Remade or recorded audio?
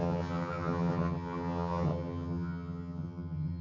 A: remade